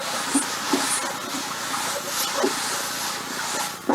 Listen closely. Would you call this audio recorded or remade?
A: recorded